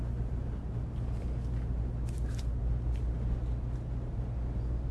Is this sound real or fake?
real